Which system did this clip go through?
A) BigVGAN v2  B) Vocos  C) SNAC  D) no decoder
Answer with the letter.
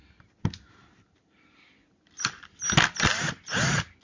D